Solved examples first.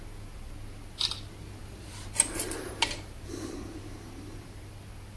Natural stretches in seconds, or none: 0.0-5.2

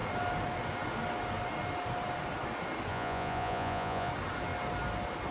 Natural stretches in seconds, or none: 0.0-2.9; 4.1-5.3

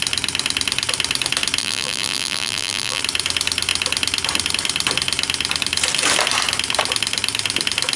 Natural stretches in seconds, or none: 0.0-1.6; 3.0-8.0

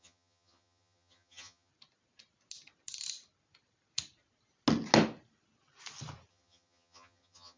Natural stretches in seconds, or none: 1.7-6.3

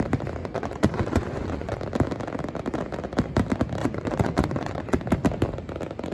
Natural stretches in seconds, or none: 0.0-0.4; 1.8-3.8; 5.0-6.1

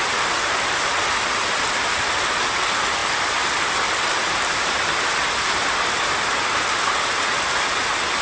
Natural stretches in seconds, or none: 0.0-8.2